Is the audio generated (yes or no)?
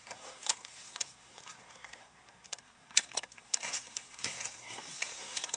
yes